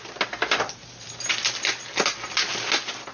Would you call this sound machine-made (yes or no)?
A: no